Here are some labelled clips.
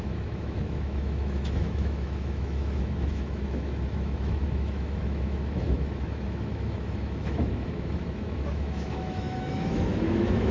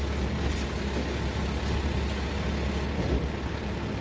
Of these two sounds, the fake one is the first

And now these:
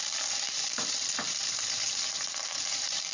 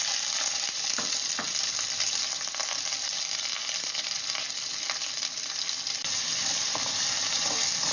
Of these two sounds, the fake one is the first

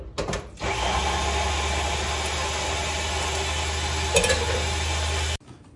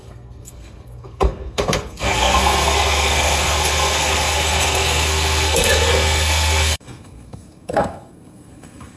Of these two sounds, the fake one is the second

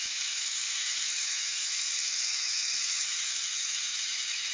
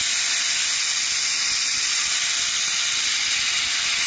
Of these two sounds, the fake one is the first